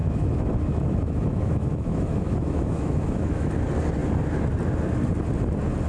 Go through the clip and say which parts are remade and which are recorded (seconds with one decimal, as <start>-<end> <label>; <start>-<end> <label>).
0.0-3.5 remade; 3.5-5.9 recorded